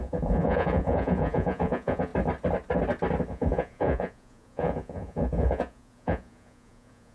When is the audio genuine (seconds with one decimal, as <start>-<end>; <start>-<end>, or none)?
2.1-3.3